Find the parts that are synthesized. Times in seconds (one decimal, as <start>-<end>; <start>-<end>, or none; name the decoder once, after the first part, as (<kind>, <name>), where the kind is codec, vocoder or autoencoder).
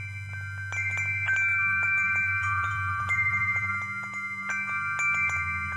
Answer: 1.5-3.7 (vocoder, BigVGAN v2)